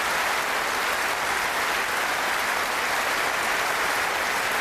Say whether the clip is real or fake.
real